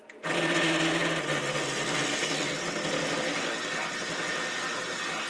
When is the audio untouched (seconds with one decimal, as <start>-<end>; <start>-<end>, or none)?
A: 0.0-5.3